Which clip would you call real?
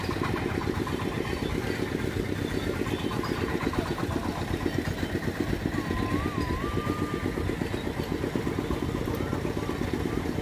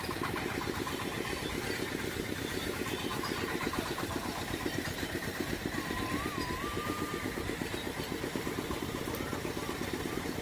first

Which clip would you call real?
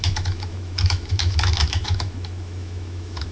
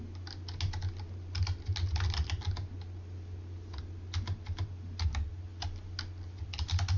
second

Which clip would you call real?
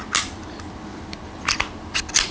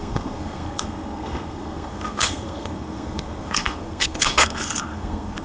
first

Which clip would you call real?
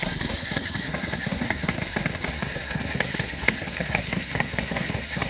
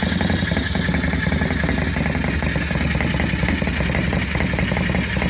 second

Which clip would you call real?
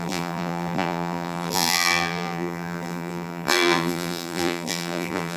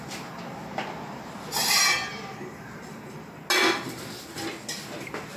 second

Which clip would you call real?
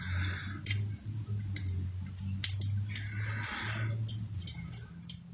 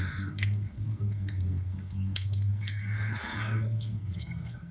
first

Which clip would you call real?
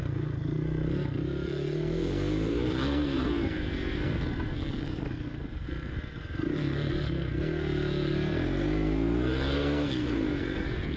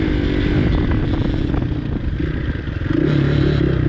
second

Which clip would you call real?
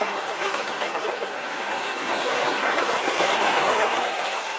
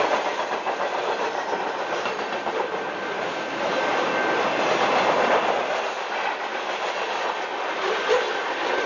second